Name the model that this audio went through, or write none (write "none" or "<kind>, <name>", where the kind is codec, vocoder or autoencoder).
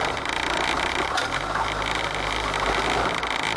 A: none